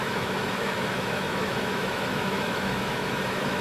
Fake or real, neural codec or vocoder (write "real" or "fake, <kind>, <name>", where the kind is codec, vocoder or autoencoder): fake, autoencoder, DAC-VAE